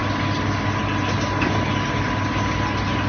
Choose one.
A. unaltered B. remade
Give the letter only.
A